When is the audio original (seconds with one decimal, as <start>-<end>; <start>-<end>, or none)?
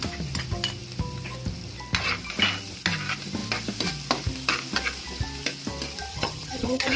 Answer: 0.0-6.1